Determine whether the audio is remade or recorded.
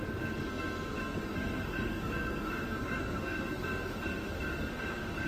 remade